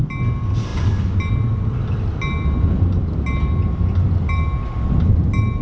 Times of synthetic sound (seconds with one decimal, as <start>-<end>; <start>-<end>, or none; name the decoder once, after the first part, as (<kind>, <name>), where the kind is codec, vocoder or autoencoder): none